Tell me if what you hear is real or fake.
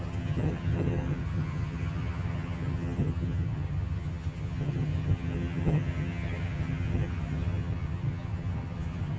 fake